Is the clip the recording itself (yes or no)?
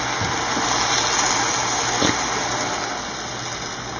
yes